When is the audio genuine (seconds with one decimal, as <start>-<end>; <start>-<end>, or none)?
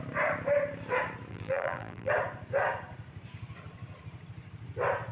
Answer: 0.0-1.3; 2.1-5.1